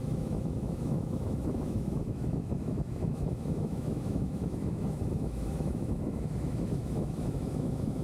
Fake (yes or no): yes